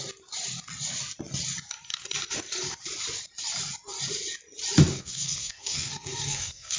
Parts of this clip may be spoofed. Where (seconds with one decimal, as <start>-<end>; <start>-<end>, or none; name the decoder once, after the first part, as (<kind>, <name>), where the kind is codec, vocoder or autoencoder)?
4.9-6.8 (codec, SNAC)